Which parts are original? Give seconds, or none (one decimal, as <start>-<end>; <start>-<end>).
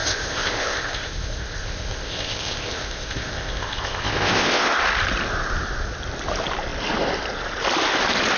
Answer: 4.8-8.4